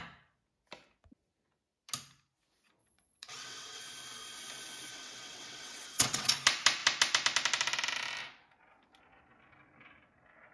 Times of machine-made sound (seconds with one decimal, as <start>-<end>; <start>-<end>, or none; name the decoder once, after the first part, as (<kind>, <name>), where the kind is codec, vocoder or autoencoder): 2.8-3.8 (vocoder, WaveNeXt); 4.9-6.3